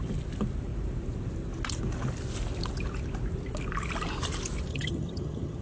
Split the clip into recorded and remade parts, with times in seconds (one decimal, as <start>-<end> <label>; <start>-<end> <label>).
0.0-4.7 recorded; 4.7-5.6 remade